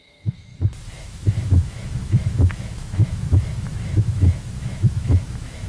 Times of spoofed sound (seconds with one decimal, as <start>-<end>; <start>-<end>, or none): 0.0-0.5; 1.0-5.7